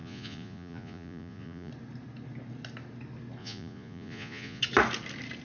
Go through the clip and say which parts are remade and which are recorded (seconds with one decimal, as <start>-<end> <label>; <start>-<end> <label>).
0.0-1.7 remade; 1.7-3.4 recorded; 3.4-4.6 remade; 4.6-5.4 recorded